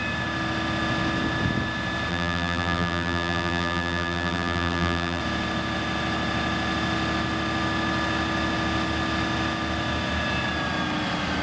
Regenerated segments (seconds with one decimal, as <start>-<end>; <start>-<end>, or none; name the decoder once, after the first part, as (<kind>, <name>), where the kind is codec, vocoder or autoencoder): 2.1-5.2 (vocoder, BigVGAN v2)